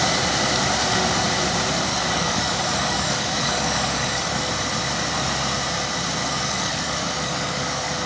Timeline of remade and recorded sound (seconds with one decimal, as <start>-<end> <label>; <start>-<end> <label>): 0.0-1.9 recorded; 1.9-4.5 remade; 4.5-6.2 recorded; 6.2-8.1 remade